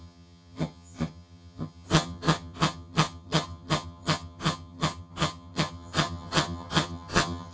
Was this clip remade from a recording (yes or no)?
yes